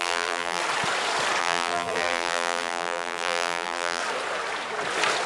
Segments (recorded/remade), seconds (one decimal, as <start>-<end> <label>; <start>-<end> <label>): 0.0-0.6 remade; 0.6-1.4 recorded; 1.4-4.0 remade; 4.0-5.3 recorded